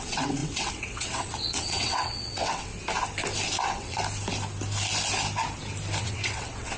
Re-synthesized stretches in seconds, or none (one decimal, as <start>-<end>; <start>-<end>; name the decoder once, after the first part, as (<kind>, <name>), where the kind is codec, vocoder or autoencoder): 0.0-2.7 (vocoder, WaveNeXt); 3.6-4.0; 6.0-6.8